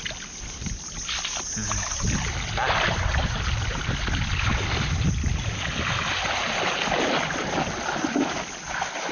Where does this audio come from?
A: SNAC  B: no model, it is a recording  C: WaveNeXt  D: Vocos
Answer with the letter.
B